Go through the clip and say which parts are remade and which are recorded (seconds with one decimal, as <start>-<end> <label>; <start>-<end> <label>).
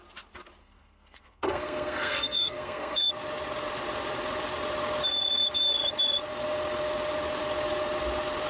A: 0.0-0.6 recorded; 0.6-3.1 remade; 3.1-8.5 recorded